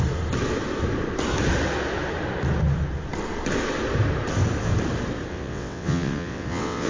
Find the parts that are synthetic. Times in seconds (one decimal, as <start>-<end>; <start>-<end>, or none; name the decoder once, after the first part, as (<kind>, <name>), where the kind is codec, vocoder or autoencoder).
5.3-6.9 (vocoder, WaveNeXt)